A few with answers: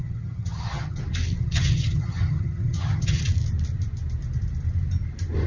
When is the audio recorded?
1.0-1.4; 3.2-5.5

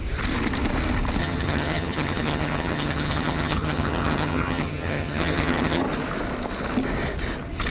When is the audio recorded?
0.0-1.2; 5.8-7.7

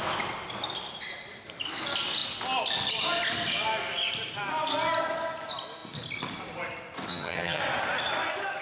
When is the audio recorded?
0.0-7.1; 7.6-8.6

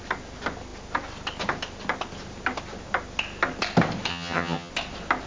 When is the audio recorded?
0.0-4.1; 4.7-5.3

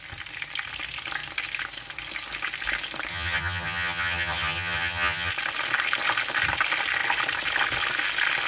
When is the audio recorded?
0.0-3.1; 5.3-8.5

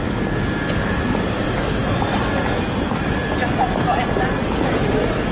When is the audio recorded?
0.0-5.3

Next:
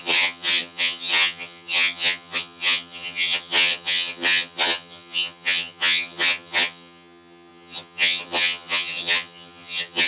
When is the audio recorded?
none

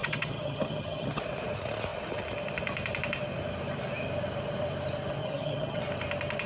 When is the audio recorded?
1.2-5.2; 5.8-6.5